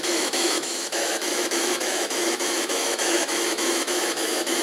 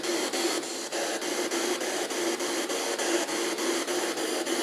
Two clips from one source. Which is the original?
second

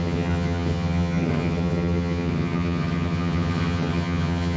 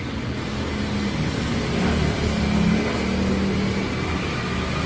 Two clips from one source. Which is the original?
second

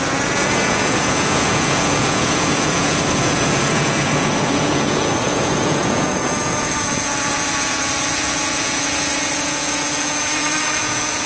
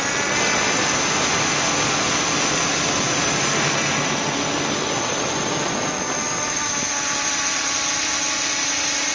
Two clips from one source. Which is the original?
second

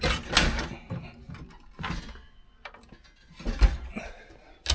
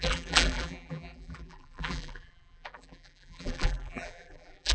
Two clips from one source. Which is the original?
first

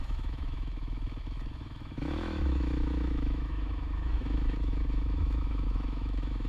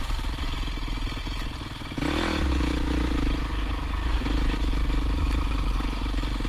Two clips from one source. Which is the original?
second